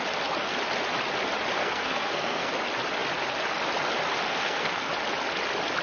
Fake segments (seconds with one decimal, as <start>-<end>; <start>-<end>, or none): 1.6-2.5; 4.3-4.9